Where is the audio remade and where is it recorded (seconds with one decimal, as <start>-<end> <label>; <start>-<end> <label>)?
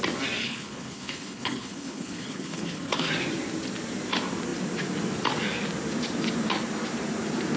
0.0-0.4 recorded; 0.4-3.1 remade; 3.1-7.6 recorded